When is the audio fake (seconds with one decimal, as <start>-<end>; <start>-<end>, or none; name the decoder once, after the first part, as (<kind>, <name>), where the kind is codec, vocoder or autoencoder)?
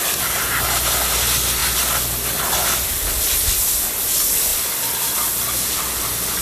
none